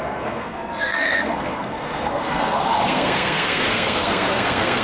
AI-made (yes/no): yes